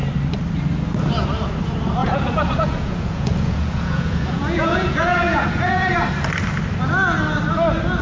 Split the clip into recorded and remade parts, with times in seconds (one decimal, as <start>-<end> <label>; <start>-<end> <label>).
0.0-2.0 recorded; 2.0-5.9 remade; 5.9-8.0 recorded